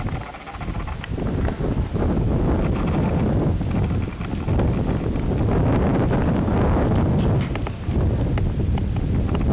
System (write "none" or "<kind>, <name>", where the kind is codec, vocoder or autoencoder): none